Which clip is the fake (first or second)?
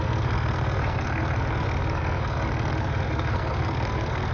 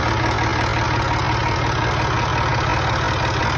first